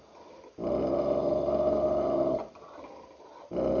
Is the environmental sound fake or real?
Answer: real